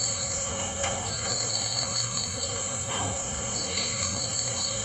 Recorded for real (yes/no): no